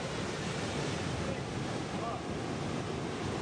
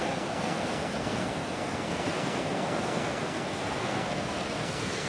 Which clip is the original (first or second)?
first